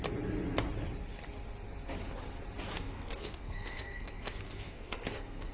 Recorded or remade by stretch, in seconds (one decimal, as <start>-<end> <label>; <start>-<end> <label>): 0.0-2.7 recorded; 2.7-5.5 remade